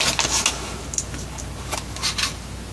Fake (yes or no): no